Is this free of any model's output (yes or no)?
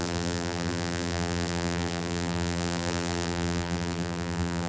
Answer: no